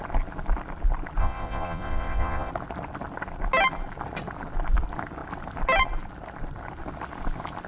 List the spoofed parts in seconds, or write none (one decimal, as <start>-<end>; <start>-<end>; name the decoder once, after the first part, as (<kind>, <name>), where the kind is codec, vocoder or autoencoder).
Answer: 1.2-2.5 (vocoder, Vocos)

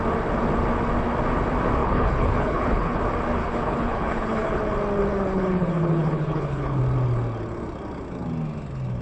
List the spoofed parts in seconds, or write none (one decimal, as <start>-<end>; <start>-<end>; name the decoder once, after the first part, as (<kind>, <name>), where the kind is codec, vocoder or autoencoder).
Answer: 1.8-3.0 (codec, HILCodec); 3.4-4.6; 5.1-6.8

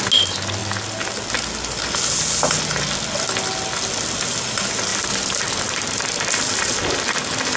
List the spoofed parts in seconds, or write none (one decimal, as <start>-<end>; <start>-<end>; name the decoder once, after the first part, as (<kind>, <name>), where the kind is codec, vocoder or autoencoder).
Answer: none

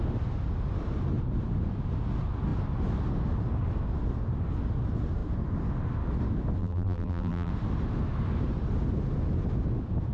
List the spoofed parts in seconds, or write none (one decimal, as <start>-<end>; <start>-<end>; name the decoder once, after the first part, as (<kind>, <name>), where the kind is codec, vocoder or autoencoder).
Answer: 6.6-7.5 (vocoder, BigVGAN v2)

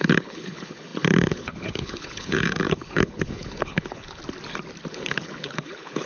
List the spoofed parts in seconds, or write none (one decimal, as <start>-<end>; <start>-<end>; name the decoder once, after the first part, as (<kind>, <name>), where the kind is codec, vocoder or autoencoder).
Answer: 0.0-4.2 (codec, HILCodec); 4.9-6.1

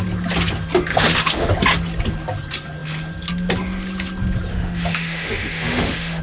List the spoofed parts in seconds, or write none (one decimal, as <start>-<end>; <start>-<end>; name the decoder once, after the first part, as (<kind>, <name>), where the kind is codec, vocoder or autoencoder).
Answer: 0.9-1.5 (autoencoder, DAC-VAE); 4.5-6.2

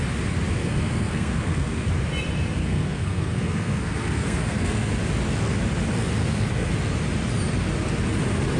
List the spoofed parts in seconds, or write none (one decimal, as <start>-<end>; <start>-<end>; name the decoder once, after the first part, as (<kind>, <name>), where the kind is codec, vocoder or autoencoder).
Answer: 0.6-1.9 (codec, SNAC); 2.6-4.9; 6.2-6.7